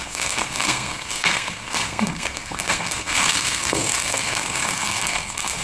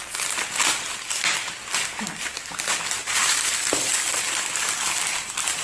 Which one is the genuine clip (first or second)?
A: second